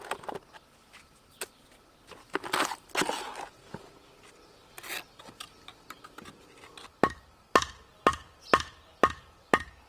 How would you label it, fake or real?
real